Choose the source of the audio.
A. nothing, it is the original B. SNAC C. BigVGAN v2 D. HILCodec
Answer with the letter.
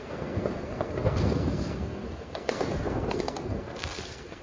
B